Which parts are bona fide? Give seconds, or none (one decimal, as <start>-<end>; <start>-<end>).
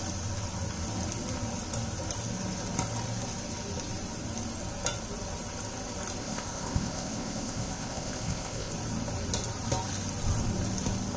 0.0-6.2; 8.7-11.2